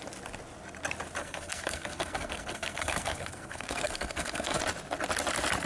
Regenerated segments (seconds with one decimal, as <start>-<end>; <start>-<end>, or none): 1.2-4.6